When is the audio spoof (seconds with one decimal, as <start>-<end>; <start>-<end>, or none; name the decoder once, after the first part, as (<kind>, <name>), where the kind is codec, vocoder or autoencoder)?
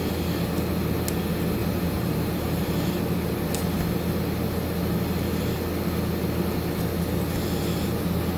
1.6-3.0 (vocoder, BigVGAN v2)